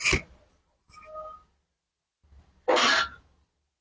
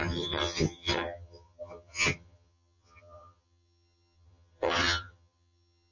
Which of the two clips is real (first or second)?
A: first